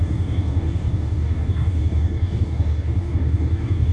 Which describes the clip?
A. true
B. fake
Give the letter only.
B